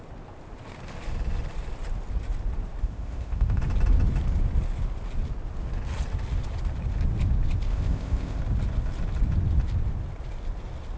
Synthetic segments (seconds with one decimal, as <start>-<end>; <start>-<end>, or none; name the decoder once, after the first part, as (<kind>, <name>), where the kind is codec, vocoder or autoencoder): 2.8-3.6 (codec, ZipCodec); 7.7-8.4